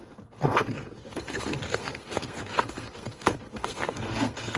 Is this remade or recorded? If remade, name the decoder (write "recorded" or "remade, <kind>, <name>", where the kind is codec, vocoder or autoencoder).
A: remade, codec, SNAC